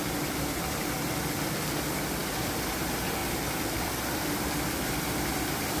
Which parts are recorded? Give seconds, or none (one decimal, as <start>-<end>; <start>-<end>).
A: 0.0-3.2